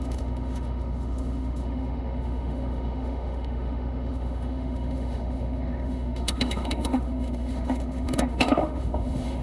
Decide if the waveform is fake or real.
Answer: fake